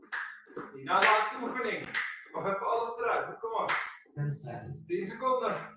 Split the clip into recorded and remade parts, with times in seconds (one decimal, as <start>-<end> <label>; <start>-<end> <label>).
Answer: 0.0-5.8 recorded